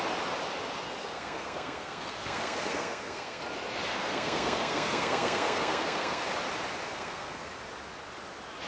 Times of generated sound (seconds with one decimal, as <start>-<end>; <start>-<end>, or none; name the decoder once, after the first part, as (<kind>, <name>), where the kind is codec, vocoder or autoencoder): 1.0-3.4 (codec, SNAC); 3.9-6.2; 6.9-7.5